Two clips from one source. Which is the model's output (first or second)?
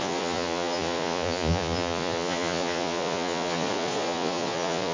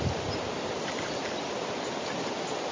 first